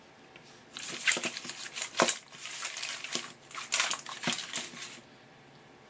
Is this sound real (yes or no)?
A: yes